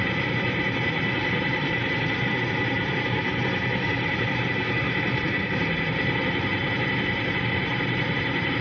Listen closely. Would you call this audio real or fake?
fake